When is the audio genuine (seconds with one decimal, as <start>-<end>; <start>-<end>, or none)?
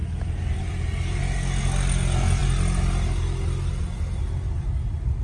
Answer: 1.2-5.2